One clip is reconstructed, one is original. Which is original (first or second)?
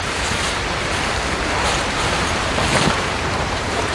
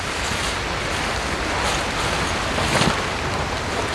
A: second